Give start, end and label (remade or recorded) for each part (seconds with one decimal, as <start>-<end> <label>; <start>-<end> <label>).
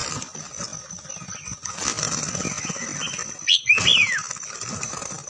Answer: 0.0-5.3 recorded